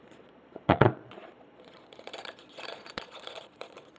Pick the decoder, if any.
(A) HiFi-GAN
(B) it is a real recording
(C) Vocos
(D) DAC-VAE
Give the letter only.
C